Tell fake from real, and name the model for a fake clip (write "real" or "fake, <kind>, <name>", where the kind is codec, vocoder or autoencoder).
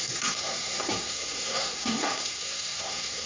fake, codec, SNAC